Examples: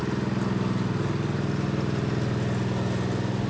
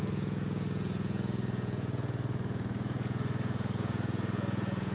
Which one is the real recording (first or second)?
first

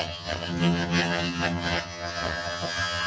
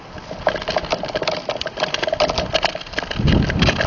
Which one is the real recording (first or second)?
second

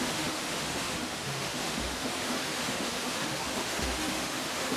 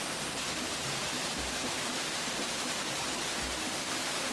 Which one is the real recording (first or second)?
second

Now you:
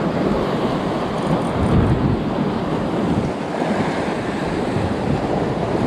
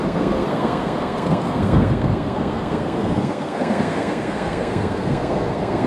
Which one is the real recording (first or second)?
first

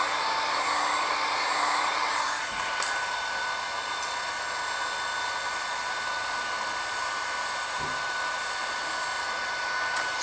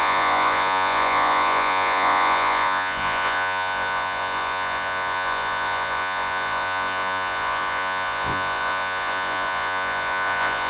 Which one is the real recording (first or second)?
first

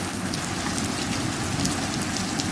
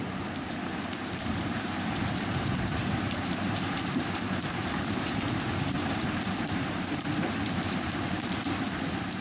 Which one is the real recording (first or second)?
first